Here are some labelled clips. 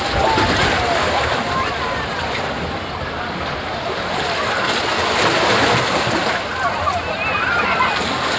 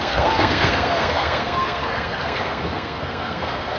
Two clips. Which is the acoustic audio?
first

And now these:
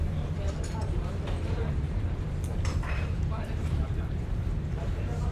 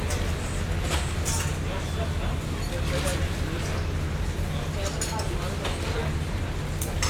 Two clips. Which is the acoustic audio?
second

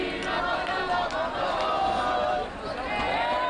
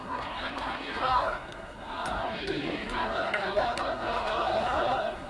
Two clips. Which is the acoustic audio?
first